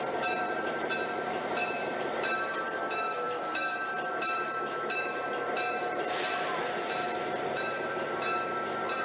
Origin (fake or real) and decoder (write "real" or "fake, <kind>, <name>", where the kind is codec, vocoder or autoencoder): fake, vocoder, BigVGAN v2